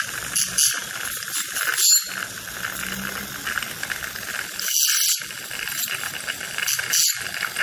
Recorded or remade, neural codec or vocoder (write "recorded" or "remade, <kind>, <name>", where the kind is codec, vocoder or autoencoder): recorded